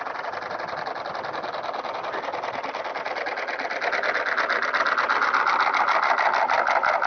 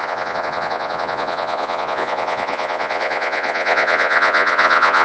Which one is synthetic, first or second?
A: second